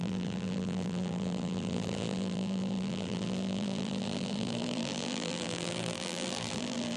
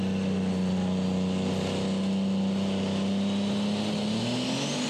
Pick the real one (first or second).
second